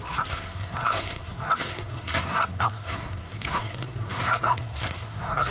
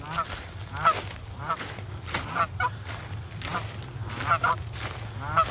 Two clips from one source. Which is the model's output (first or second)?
first